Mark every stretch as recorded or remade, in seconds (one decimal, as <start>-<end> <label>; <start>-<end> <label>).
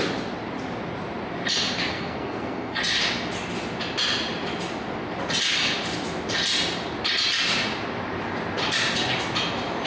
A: 0.0-1.9 recorded; 1.9-2.8 remade; 2.8-9.9 recorded